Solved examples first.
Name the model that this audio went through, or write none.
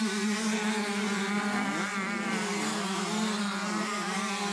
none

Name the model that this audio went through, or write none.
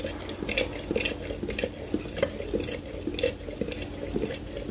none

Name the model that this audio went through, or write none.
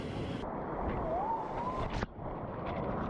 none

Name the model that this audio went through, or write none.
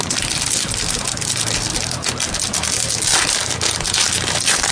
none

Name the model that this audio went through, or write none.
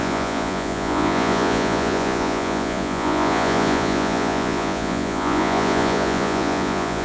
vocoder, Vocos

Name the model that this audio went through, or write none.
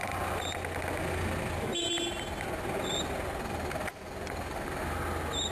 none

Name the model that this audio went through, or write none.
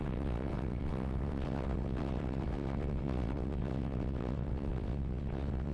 vocoder, WaveNeXt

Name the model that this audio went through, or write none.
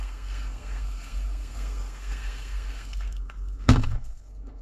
codec, SNAC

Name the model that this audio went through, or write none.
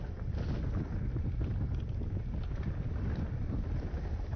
none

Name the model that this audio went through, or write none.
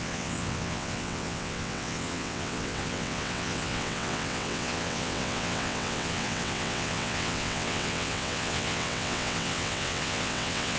vocoder, WaveNeXt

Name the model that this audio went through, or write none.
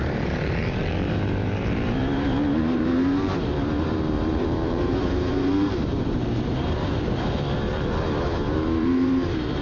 vocoder, BigVGAN v2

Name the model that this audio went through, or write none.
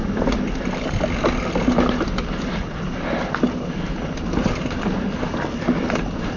none